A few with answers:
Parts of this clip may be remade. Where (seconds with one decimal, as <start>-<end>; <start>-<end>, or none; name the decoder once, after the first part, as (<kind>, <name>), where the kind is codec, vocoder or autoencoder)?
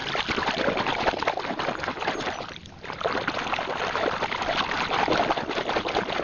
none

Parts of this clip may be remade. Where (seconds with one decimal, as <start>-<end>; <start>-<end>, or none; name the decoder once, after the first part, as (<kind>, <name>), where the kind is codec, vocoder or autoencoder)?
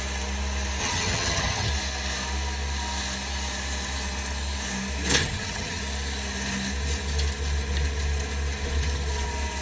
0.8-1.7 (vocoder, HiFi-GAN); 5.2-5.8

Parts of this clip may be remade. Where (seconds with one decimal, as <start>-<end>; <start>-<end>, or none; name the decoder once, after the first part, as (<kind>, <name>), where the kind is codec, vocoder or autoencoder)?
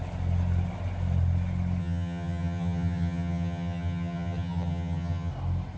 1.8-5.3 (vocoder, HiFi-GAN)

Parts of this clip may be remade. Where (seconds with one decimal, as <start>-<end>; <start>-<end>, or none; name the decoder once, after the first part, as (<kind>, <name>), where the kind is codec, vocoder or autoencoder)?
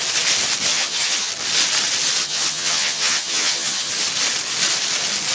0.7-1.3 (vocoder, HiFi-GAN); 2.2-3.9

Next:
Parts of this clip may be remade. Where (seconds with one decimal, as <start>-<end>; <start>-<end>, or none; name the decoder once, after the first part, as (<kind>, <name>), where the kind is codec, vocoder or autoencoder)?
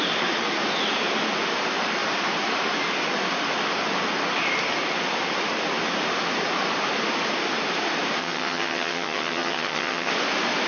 8.2-10.1 (vocoder, HiFi-GAN)